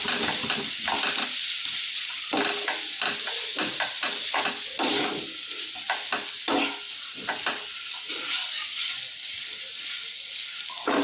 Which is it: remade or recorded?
recorded